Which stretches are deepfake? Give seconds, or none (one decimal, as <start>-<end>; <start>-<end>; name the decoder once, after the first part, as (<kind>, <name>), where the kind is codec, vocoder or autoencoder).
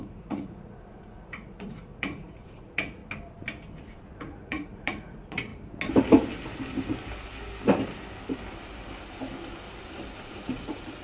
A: 0.0-3.0 (vocoder, Vocos); 4.2-5.5; 10.2-11.0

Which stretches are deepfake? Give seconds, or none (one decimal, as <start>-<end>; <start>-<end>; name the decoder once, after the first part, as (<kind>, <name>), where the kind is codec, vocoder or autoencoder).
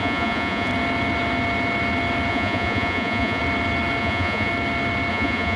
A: 0.0-0.7 (vocoder, Vocos); 2.3-3.4; 4.0-4.5; 5.1-5.6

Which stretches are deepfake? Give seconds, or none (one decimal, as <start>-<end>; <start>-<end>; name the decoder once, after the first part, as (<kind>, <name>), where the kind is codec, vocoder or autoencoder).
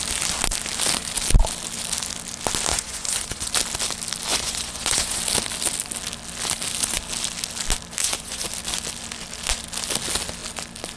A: 2.7-3.5 (vocoder, Vocos); 4.3-5.2; 8.0-8.5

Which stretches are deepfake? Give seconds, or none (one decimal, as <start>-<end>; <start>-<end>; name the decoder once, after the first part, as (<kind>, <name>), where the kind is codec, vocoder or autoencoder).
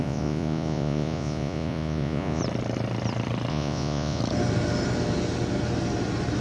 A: 0.0-2.4 (vocoder, Vocos); 3.5-4.2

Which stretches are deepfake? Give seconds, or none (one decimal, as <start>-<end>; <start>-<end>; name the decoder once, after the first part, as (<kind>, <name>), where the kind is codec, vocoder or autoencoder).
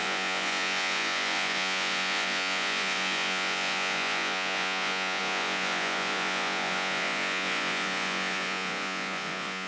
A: 0.0-9.7 (vocoder, Vocos)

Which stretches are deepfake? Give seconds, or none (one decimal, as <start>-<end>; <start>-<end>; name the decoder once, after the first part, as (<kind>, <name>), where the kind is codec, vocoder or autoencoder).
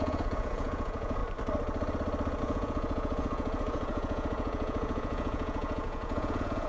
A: 0.0-1.2 (vocoder, Vocos); 2.4-6.7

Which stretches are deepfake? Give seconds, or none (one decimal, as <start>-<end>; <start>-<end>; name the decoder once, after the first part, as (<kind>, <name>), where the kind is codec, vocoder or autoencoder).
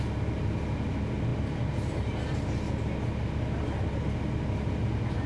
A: none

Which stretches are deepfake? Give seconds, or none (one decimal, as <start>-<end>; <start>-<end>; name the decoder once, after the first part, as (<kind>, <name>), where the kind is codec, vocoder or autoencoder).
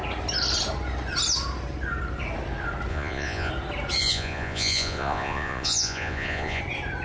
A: 2.9-3.5 (vocoder, Vocos); 4.0-6.6